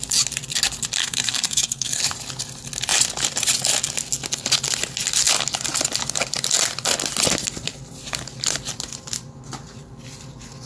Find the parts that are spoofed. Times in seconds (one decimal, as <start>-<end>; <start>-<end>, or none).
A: 1.0-2.0